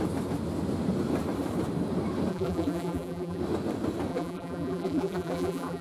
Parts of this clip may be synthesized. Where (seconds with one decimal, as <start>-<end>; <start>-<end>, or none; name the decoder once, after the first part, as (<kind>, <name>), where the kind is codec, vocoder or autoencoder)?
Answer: 2.3-3.4 (vocoder, BigVGAN v2); 4.1-5.8